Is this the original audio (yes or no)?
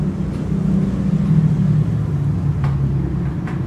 yes